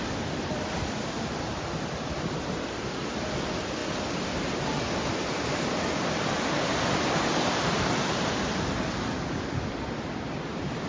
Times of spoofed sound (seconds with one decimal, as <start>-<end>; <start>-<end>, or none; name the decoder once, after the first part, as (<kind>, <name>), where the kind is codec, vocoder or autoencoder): none

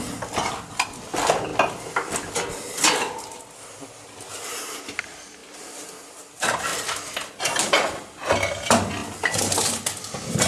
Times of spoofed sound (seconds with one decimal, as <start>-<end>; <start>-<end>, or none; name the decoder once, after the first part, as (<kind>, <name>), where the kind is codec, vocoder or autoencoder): none

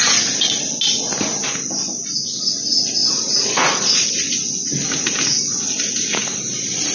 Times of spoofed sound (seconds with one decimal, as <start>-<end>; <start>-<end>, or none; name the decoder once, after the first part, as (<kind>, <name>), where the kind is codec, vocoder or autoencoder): 3.0-4.1 (vocoder, Vocos)

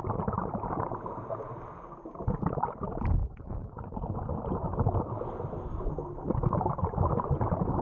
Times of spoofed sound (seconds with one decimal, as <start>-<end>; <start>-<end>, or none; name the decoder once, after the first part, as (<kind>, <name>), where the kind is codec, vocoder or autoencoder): 3.2-4.0 (vocoder, Vocos)

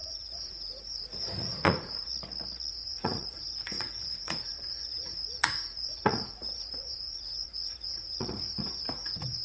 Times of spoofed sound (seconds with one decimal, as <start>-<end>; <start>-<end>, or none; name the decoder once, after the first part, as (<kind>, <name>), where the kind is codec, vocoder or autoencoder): 0.0-2.1 (vocoder, Vocos); 2.7-9.4

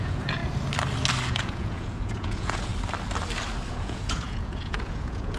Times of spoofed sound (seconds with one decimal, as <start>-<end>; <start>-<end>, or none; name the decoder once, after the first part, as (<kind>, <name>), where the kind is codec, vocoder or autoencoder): 0.0-0.4 (vocoder, Vocos); 1.3-2.7; 3.7-5.4

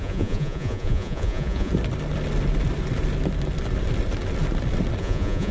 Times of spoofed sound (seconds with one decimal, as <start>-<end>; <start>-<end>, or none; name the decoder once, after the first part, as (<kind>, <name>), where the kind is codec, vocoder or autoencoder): 0.0-1.7 (vocoder, Vocos); 5.0-5.5